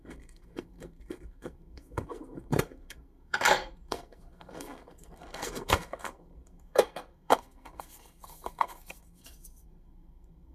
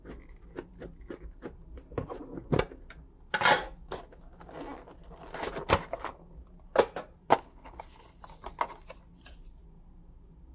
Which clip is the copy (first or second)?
first